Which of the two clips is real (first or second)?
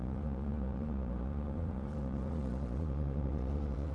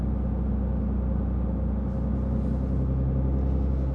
second